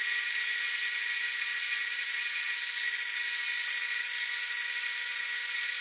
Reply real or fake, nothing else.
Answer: real